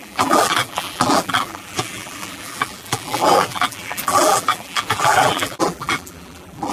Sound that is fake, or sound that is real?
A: fake